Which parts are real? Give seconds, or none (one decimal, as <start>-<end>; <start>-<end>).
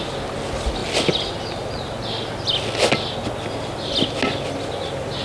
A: 0.0-5.2